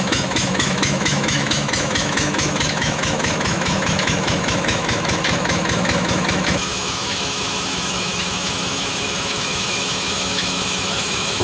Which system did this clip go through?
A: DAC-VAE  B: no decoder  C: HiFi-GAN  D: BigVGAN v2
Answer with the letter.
A